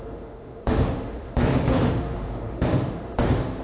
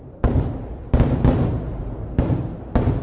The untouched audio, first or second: second